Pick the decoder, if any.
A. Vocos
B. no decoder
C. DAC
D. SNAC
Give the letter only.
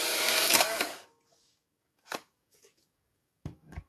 C